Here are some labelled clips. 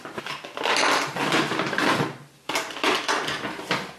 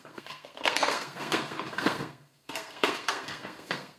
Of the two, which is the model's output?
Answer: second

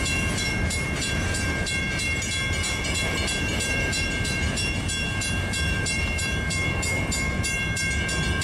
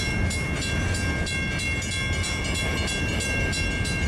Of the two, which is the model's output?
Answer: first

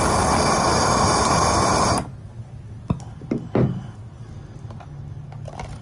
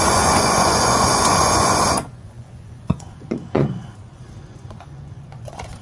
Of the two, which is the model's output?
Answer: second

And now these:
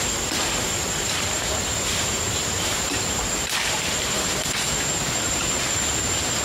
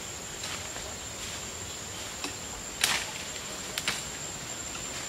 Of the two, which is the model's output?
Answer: first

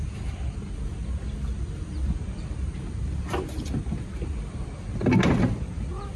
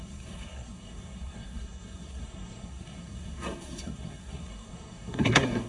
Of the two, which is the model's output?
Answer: second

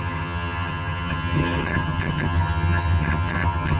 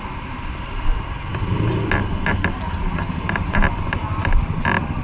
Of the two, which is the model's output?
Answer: first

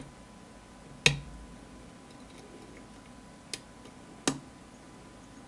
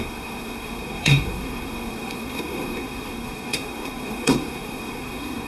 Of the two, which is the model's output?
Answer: second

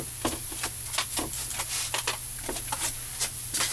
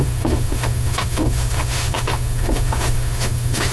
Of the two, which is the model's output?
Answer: second